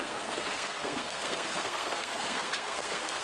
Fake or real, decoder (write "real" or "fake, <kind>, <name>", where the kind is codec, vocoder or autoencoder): fake, codec, SNAC